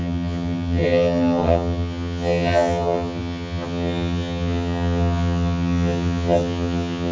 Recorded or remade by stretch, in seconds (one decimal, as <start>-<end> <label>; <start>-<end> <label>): 0.0-7.1 remade